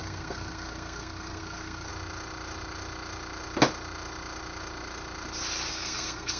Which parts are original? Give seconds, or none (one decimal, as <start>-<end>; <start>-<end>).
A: 1.9-5.7